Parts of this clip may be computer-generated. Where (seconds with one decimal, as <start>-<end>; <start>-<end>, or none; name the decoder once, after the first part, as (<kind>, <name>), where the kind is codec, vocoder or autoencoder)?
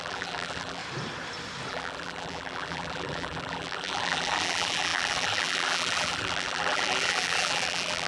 0.0-0.8 (vocoder, BigVGAN v2); 1.7-8.1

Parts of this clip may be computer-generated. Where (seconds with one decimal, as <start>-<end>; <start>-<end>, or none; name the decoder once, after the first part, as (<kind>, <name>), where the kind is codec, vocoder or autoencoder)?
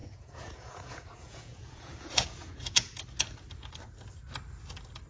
0.0-3.0 (vocoder, Vocos)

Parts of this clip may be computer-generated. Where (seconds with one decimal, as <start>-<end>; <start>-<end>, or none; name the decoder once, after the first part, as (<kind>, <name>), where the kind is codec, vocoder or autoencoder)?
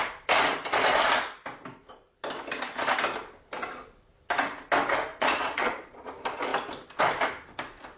5.1-6.1 (vocoder, Vocos)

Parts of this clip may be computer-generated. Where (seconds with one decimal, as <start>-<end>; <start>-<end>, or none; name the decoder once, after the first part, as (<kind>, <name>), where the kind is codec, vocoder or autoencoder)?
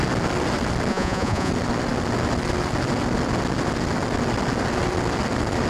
0.9-1.5 (vocoder, Vocos)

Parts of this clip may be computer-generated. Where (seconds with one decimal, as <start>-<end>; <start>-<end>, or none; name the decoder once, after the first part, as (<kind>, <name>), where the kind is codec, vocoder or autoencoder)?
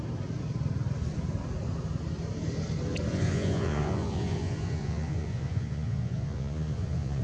3.1-7.2 (vocoder, Vocos)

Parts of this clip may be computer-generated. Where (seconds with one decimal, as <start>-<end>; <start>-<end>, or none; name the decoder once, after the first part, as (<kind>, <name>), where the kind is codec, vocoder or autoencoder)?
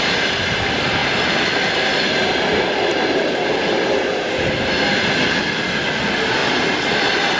6.4-7.4 (vocoder, BigVGAN v2)